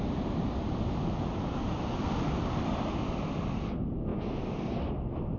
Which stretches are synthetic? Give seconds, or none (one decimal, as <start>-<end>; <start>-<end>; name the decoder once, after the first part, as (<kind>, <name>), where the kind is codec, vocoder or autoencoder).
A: none